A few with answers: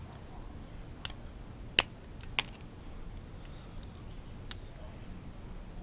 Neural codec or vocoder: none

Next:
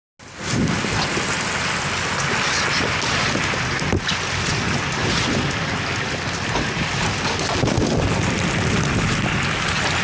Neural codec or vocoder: none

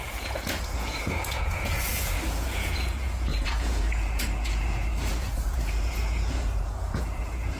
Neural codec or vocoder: vocoder, Vocos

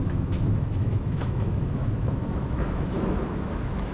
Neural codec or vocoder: autoencoder, DAC-VAE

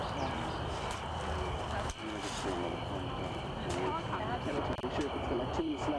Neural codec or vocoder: none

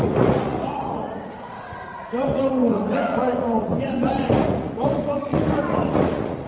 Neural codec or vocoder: vocoder, Vocos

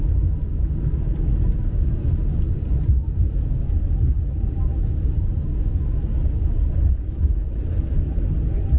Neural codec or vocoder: none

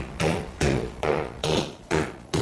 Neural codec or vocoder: vocoder, Vocos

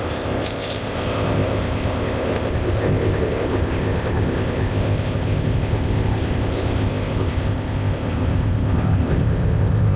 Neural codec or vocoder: codec, ZipCodec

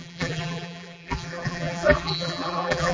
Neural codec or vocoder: vocoder, BigVGAN v2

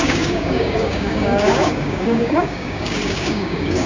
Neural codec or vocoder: codec, DAC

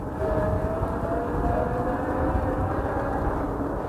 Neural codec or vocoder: none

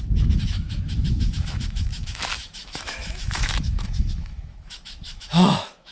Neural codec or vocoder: autoencoder, DAC-VAE